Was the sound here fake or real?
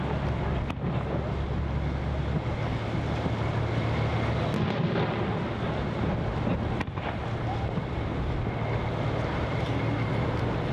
real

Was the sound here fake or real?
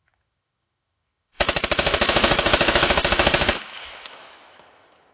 fake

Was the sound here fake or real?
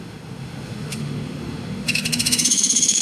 fake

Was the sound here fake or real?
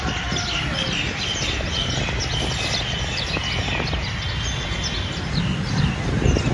real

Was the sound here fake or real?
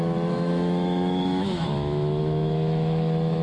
fake